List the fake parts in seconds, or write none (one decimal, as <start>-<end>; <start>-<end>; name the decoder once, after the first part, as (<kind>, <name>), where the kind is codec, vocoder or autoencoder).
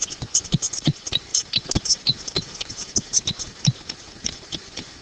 0.0-1.3 (vocoder, Vocos); 4.3-5.0